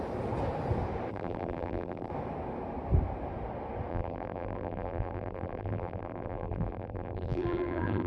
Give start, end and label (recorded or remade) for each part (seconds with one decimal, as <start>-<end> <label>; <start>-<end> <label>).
0.0-1.1 recorded; 1.1-2.1 remade; 2.1-3.9 recorded; 3.9-8.1 remade